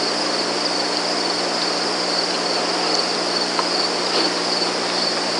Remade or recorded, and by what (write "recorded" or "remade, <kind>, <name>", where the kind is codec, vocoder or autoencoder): recorded